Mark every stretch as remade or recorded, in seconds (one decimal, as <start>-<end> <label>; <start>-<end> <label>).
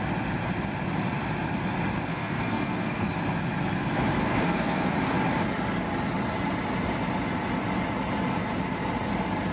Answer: 0.0-2.1 recorded; 2.1-3.1 remade; 3.1-4.2 recorded; 4.2-4.9 remade; 4.9-9.5 recorded